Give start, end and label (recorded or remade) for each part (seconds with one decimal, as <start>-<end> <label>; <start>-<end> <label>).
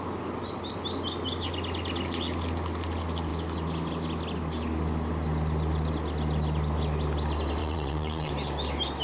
0.0-7.6 recorded; 7.6-8.3 remade; 8.3-9.0 recorded